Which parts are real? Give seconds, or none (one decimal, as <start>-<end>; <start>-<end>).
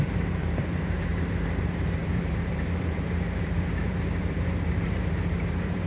1.1-1.6